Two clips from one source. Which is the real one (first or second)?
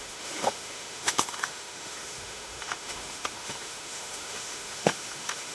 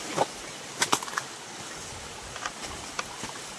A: second